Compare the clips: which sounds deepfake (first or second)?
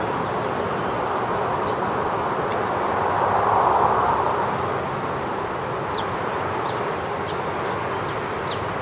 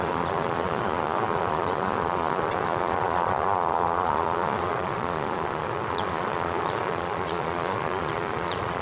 second